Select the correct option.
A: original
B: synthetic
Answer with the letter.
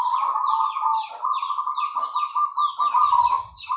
A